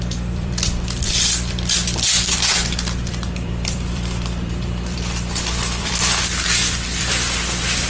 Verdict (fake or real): fake